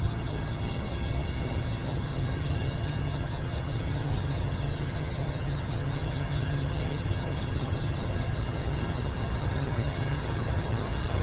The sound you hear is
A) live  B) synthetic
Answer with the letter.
B